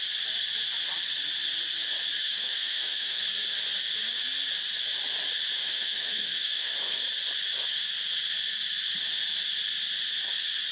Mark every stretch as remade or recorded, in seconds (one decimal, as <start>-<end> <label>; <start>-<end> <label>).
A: 0.0-2.2 recorded; 2.2-3.2 remade; 3.2-5.6 recorded; 5.6-6.7 remade; 6.7-10.7 recorded